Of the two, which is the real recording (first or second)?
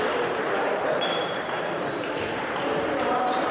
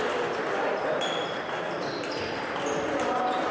second